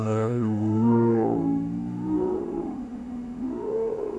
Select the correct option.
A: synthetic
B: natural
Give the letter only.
A